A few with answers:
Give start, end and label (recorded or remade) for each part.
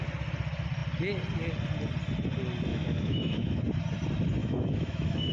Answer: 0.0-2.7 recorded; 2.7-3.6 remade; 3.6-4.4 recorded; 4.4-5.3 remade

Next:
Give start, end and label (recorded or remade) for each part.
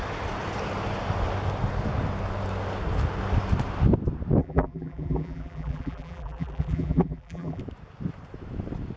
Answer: 0.0-4.4 recorded; 4.4-7.6 remade; 7.6-9.0 recorded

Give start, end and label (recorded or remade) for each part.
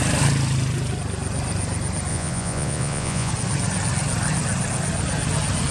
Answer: 0.0-2.1 recorded; 2.1-3.3 remade; 3.3-5.7 recorded